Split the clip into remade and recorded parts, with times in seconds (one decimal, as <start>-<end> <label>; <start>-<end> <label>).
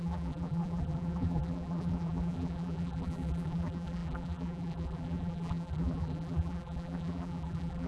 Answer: 0.0-7.9 remade